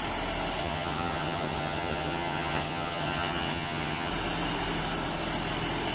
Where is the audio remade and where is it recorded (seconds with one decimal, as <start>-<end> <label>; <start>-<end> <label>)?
0.0-0.6 recorded; 0.6-4.1 remade; 4.1-5.9 recorded